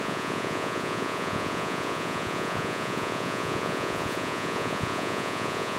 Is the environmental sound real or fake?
fake